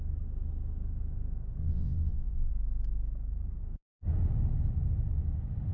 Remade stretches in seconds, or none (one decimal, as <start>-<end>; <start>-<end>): 1.6-2.5